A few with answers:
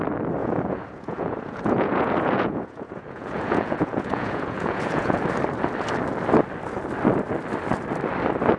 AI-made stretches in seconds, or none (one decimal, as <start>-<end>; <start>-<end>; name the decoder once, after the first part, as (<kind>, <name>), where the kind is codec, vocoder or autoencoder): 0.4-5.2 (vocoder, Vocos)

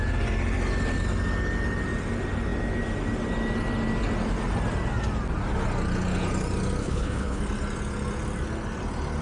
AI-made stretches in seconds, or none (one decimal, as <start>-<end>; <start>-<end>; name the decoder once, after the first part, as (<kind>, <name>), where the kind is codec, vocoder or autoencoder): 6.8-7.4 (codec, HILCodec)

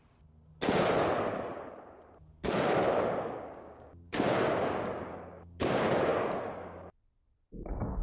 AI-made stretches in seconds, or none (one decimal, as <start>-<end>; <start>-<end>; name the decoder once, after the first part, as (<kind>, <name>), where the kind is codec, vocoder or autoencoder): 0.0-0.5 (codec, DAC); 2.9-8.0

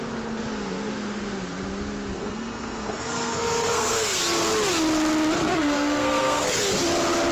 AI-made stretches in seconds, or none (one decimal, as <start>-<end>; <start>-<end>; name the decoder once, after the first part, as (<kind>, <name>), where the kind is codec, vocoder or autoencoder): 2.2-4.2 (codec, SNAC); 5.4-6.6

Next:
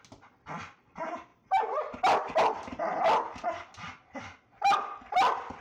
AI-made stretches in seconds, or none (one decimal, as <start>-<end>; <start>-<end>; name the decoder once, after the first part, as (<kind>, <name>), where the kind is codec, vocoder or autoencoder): none

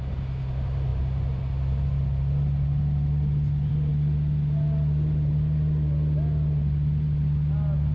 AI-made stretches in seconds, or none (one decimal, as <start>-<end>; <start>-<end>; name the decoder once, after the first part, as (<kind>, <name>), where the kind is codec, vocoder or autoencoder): none

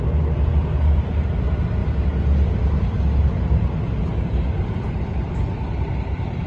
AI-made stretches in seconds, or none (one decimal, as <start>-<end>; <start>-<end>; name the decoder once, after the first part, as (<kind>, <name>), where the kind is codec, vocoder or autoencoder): none

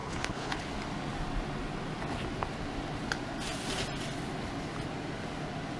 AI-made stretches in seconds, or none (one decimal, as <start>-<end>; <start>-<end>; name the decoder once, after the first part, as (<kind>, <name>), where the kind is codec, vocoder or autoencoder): 0.0-0.7 (codec, HILCodec)